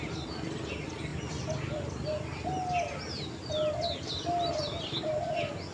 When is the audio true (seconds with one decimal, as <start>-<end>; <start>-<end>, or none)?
0.0-5.7